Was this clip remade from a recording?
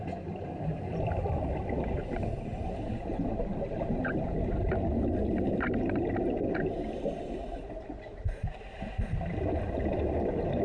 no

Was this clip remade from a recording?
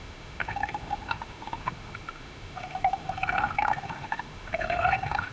yes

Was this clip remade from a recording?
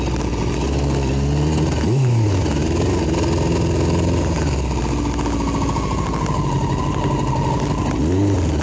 no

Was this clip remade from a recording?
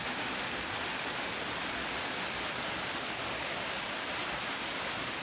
yes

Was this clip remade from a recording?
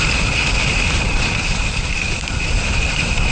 yes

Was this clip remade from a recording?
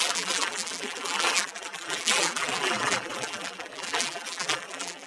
yes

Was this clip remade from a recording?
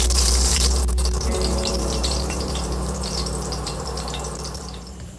yes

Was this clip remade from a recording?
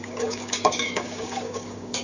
yes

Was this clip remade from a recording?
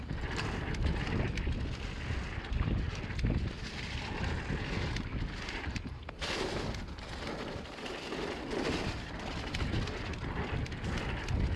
no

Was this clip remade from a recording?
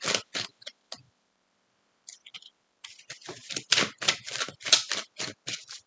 no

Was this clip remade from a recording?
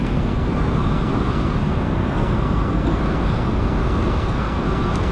yes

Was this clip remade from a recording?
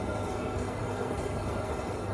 yes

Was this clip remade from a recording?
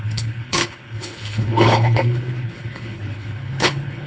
yes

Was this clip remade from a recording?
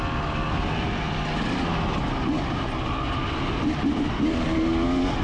no